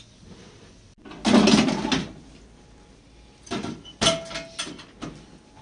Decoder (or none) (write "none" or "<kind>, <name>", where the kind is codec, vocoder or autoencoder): none